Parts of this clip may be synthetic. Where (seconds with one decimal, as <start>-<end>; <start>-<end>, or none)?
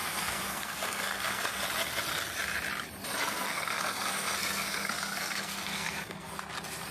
0.0-1.6; 3.2-6.4